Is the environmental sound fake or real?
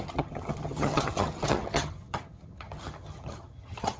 fake